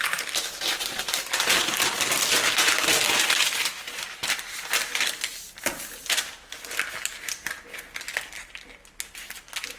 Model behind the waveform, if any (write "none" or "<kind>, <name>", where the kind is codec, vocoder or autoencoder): none